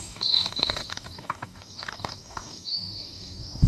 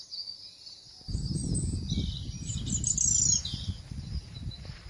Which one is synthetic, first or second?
first